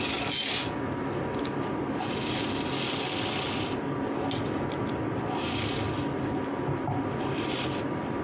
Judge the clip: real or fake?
real